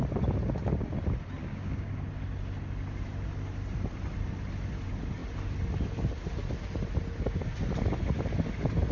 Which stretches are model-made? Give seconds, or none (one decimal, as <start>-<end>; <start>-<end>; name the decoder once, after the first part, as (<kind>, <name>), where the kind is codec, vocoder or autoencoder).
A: 1.4-1.9 (codec, DAC)